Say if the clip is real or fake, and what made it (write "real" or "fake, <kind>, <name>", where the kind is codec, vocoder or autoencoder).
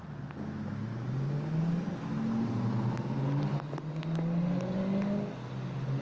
real